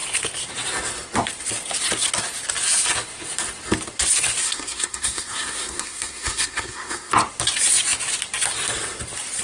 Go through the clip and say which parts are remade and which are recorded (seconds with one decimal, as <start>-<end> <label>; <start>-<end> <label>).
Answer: 0.0-4.4 recorded; 4.4-7.1 remade; 7.1-9.4 recorded